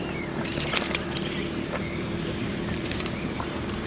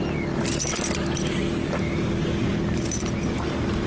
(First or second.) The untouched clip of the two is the second